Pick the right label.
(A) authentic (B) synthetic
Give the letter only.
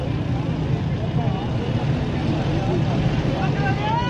A